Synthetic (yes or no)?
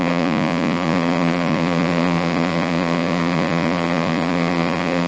yes